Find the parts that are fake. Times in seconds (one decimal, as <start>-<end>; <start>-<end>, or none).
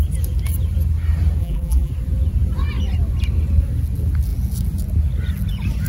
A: 1.4-1.9